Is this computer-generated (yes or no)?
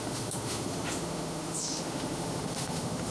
yes